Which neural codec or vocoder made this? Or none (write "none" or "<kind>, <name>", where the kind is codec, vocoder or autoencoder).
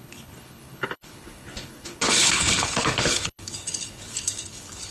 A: codec, HILCodec